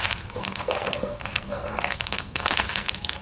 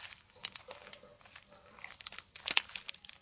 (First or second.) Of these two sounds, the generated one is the first